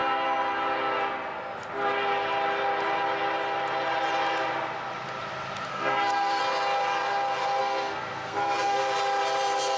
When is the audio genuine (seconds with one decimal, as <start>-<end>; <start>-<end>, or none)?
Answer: 0.0-5.7; 6.4-7.6; 8.8-9.8